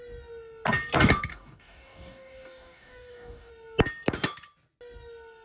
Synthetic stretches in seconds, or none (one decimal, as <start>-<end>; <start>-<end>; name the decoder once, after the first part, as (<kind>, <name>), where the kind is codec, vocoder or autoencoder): 1.3-3.5 (codec, DAC)